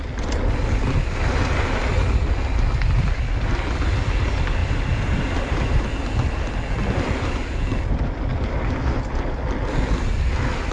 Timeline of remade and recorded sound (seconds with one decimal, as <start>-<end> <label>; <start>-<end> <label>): 0.0-4.6 recorded; 4.6-5.9 remade; 5.9-10.7 recorded